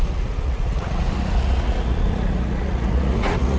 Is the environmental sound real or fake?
fake